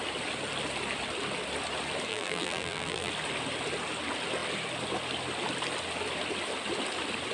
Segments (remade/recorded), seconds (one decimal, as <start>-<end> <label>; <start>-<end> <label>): 0.0-2.1 recorded; 2.1-3.1 remade; 3.1-7.3 recorded